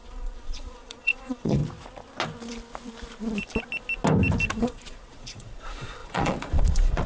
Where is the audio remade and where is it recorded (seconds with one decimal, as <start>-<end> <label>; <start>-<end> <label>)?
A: 0.0-1.6 remade; 1.6-4.6 recorded; 4.6-7.1 remade